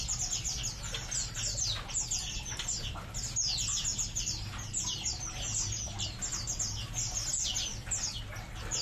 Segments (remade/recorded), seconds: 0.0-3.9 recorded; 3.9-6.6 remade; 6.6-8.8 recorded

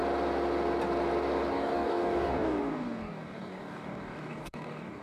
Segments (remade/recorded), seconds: 0.0-1.5 recorded; 1.5-5.0 remade

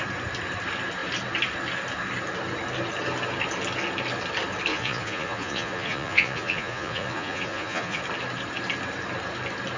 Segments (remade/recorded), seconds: 0.0-4.7 recorded; 4.7-8.0 remade; 8.0-9.8 recorded

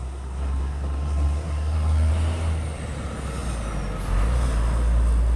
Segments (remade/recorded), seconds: 0.0-2.1 remade; 2.1-5.4 recorded

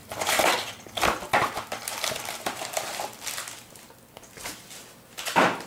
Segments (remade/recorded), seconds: 0.0-2.7 remade; 2.7-5.7 recorded